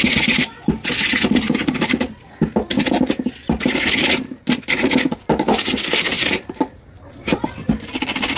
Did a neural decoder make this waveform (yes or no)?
no